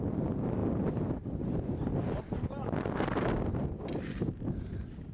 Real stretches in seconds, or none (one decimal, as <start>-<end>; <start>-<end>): 0.0-5.1